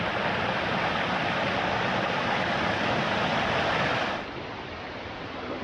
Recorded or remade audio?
remade